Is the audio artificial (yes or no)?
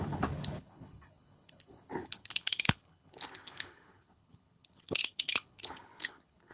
yes